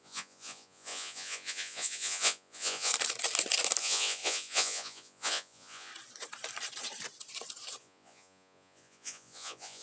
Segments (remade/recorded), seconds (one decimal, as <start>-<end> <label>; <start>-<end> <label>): 0.0-2.9 remade; 2.9-3.8 recorded; 3.8-5.9 remade; 5.9-7.8 recorded; 7.8-9.8 remade